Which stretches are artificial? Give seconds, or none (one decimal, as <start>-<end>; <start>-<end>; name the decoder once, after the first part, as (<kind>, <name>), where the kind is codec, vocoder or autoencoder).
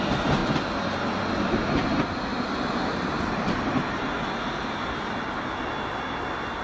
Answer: 2.3-4.1 (vocoder, BigVGAN v2)